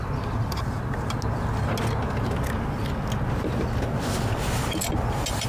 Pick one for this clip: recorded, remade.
recorded